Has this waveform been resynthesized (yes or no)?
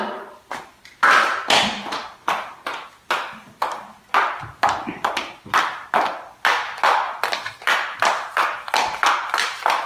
no